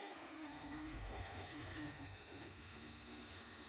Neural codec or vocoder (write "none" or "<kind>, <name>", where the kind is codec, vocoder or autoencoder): autoencoder, DAC-VAE